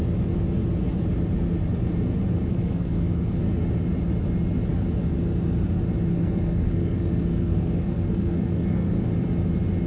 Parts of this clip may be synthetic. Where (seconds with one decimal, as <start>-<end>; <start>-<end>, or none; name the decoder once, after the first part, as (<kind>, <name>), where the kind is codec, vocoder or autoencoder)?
2.5-3.4 (codec, SNAC); 6.1-9.1